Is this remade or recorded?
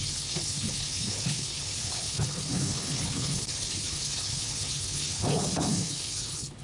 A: remade